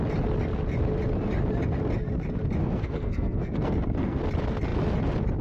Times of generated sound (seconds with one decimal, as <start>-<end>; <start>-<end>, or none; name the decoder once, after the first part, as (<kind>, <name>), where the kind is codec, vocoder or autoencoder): 2.6-4.2 (codec, SNAC)